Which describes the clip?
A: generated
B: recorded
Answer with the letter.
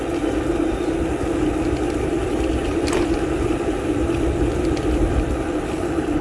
B